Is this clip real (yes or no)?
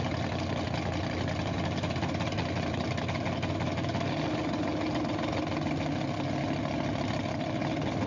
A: yes